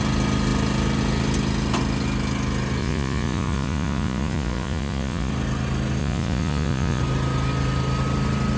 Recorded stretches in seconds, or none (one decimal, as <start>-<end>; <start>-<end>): 0.0-2.8; 5.3-6.0; 7.0-8.6